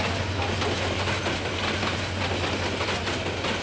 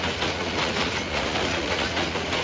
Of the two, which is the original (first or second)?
first